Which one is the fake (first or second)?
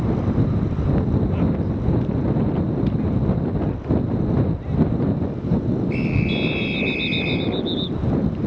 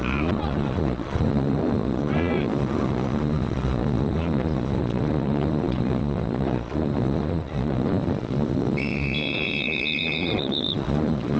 second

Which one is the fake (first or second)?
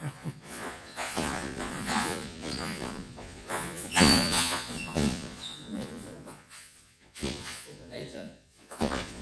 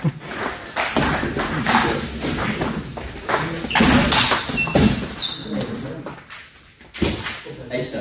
first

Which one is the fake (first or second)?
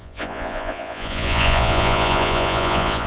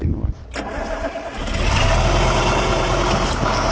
first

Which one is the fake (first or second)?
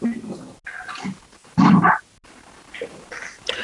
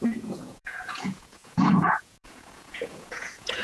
second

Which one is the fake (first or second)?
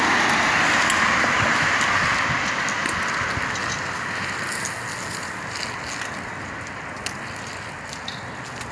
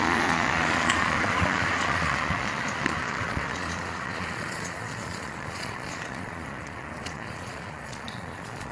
second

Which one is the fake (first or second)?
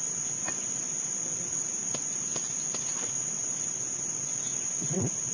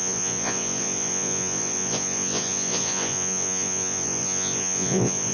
second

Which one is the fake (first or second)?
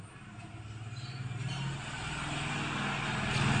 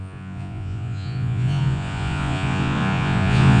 second